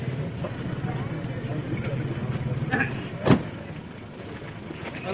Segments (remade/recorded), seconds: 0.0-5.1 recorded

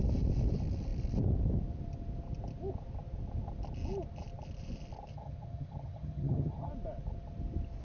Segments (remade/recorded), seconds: 0.0-5.1 recorded; 5.1-6.7 remade; 6.7-7.8 recorded

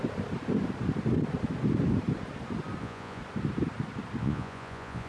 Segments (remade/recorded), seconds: 0.0-2.8 recorded; 2.8-3.2 remade; 3.2-4.2 recorded; 4.2-5.1 remade

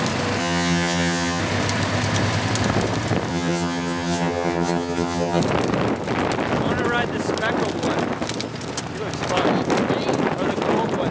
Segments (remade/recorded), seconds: 0.0-0.4 recorded; 0.4-1.4 remade; 1.4-3.3 recorded; 3.3-5.4 remade; 5.4-11.1 recorded

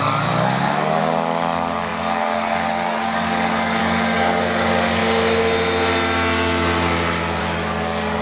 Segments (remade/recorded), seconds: 0.0-5.0 remade; 5.0-7.4 recorded; 7.4-8.2 remade

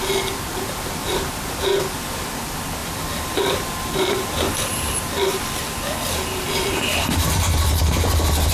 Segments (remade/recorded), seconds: 0.0-1.0 recorded; 1.0-2.0 remade; 2.0-2.8 recorded; 2.8-5.4 remade; 5.4-8.5 recorded